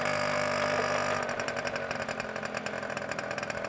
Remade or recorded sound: recorded